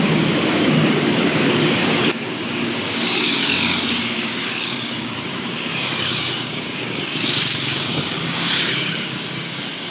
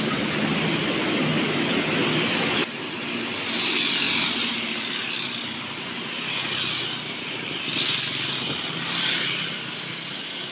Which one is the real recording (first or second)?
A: second